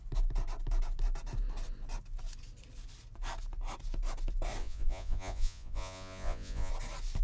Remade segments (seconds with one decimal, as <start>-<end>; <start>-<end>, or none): 4.6-6.7